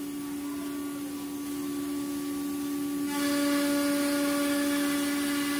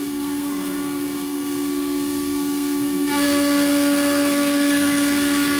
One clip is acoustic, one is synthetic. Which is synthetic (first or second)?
second